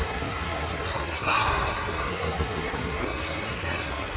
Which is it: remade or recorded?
remade